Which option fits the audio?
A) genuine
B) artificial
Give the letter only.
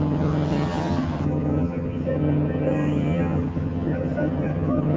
B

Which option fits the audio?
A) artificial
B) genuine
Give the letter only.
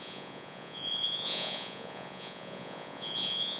A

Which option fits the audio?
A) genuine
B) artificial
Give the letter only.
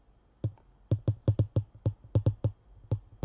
A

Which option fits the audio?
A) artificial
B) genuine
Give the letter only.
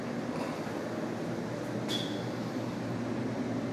B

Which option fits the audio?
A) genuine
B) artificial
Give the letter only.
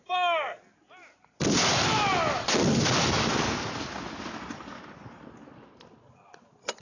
A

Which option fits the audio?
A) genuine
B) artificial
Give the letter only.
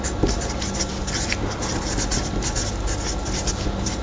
A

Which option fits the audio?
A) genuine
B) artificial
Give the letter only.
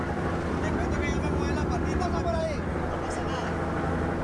A